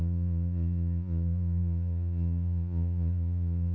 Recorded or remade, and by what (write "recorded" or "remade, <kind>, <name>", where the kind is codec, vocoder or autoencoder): remade, vocoder, Vocos